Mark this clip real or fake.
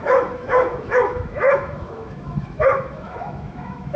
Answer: fake